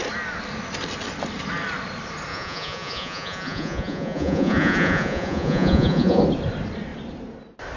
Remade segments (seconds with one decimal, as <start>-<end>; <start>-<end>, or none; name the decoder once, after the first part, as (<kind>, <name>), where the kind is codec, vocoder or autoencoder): 2.3-6.2 (vocoder, Vocos)